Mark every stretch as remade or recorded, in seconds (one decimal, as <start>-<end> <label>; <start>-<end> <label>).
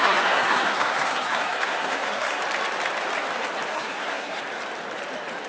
0.0-2.4 remade; 2.4-3.7 recorded; 3.7-4.4 remade; 4.4-5.5 recorded